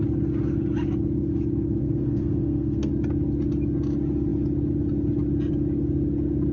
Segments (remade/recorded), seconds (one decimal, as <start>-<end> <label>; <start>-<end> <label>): 0.0-1.8 recorded; 1.8-2.9 remade; 2.9-6.5 recorded